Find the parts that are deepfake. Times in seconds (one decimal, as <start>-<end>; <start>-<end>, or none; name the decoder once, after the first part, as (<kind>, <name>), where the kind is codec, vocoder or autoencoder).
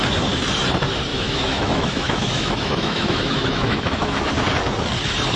1.1-4.3 (autoencoder, DAC-VAE)